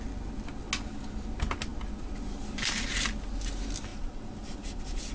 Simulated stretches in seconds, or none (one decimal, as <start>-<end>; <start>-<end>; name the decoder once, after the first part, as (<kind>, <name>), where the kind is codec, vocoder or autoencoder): 3.9-5.1 (vocoder, BigVGAN v2)